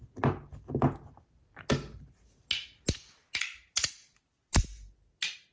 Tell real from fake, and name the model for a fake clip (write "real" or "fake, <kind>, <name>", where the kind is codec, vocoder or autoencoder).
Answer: real